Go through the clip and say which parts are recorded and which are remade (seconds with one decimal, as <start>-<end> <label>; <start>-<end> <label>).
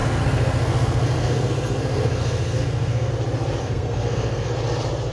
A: 0.0-3.1 remade; 3.1-3.6 recorded; 3.6-4.5 remade; 4.5-5.1 recorded